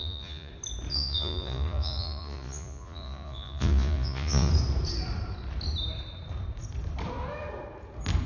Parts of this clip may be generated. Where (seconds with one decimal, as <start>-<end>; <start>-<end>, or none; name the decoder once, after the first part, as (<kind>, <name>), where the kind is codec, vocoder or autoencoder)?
0.0-0.5 (vocoder, Vocos); 0.9-4.5